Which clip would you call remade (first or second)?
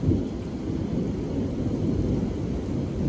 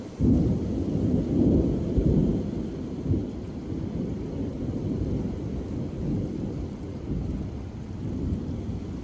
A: second